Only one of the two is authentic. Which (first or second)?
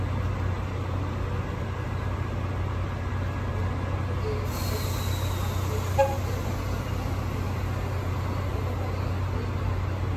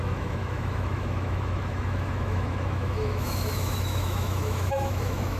first